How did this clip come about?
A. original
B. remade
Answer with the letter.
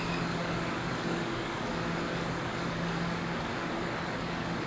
B